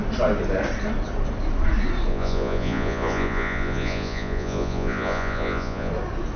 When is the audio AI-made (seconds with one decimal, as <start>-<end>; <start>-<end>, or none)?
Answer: 2.1-5.9